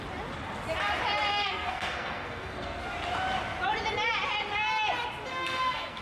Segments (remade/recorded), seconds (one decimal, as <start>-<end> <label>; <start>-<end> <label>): 0.0-1.3 recorded; 1.3-2.8 remade; 2.8-5.3 recorded; 5.3-6.0 remade